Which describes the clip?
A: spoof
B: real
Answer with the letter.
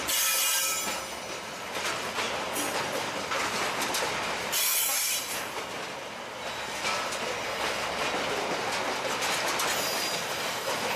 B